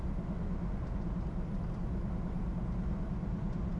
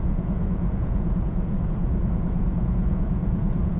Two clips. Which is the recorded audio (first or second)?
first